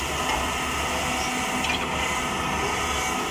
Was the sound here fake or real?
real